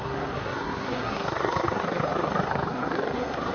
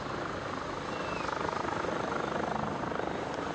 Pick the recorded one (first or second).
second